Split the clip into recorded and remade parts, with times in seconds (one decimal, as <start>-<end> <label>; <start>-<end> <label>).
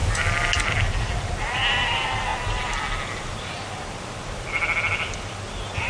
0.0-5.9 recorded